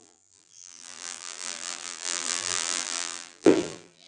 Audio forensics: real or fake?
fake